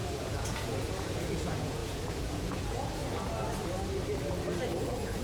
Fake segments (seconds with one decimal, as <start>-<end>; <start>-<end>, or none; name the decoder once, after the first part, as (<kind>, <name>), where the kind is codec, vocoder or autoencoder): 0.0-3.0 (vocoder, Vocos); 4.8-5.2